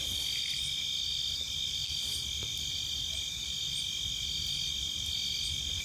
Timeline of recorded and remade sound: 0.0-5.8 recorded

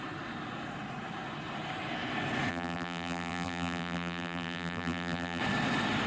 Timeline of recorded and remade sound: 0.0-2.5 recorded; 2.5-5.4 remade; 5.4-6.1 recorded

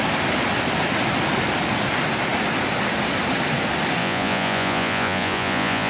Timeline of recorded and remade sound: 0.0-4.0 recorded; 4.0-5.9 remade